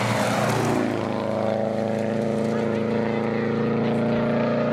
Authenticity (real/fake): real